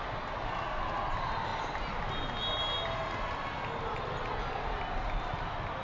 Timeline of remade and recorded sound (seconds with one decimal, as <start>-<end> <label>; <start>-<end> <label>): 0.0-5.8 recorded